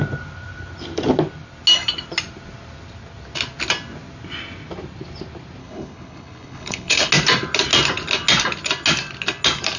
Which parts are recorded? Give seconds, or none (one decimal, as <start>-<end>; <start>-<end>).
0.0-5.6; 7.1-9.8